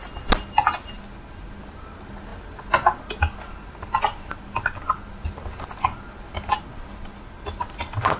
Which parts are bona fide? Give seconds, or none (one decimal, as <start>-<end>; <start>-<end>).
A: 0.0-8.2